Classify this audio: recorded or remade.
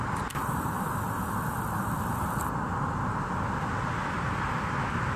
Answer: recorded